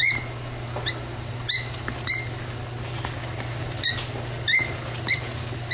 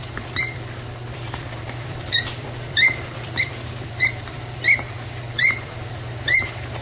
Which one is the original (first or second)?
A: first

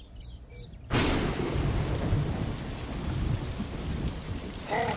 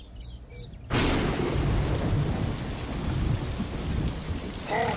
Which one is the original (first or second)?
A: second